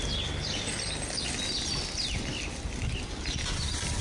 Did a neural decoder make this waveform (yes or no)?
no